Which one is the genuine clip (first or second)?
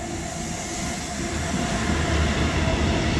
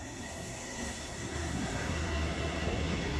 first